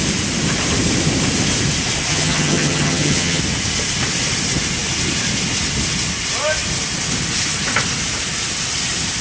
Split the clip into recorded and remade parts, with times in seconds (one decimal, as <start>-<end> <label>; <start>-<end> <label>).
0.0-2.1 recorded; 2.1-3.4 remade; 3.4-9.2 recorded